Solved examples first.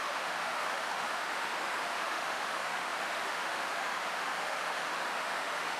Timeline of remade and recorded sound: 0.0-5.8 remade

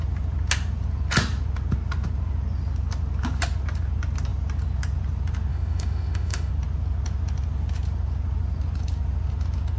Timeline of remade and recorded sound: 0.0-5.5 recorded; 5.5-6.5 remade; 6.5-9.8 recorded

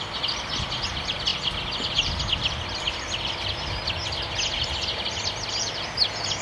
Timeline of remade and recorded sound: 0.0-6.4 recorded

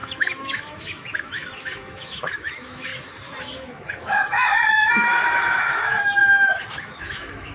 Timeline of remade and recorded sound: 0.0-2.9 remade; 2.9-3.4 recorded; 3.4-6.2 remade; 6.2-6.8 recorded; 6.8-7.5 remade

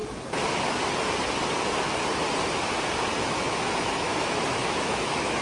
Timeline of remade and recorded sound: 0.0-3.2 recorded; 3.2-5.4 remade

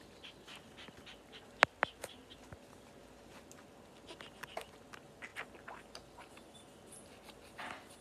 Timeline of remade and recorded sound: 0.0-8.0 recorded

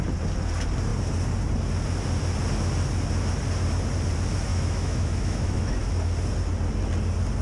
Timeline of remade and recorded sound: 0.0-4.5 recorded; 4.5-5.9 remade; 5.9-7.4 recorded